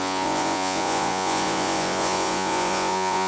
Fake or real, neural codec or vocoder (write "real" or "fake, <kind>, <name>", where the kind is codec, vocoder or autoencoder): fake, vocoder, Vocos